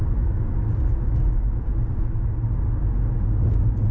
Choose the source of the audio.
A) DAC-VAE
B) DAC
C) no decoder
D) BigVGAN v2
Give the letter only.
C